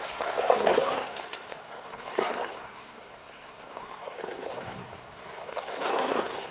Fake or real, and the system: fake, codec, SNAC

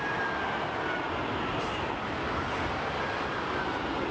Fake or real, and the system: real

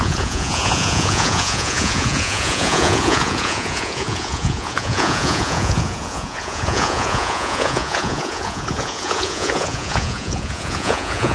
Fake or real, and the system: fake, vocoder, Vocos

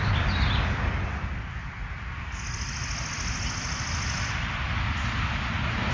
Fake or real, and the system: real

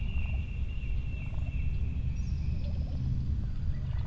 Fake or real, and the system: real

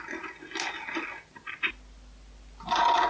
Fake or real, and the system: real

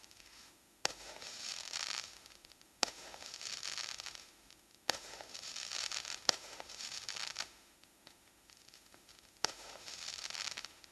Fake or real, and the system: fake, autoencoder, DAC-VAE